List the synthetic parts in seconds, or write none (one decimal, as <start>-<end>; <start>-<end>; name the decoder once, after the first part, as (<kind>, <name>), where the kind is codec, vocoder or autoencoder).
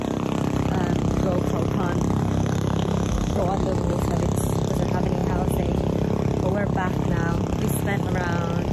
2.2-3.4 (codec, SNAC)